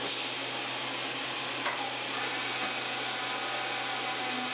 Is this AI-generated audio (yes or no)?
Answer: no